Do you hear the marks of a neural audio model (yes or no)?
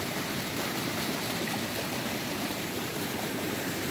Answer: yes